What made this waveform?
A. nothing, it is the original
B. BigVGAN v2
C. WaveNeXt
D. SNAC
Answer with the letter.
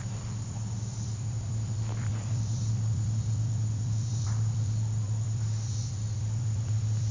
B